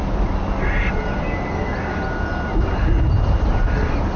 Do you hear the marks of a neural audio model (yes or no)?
no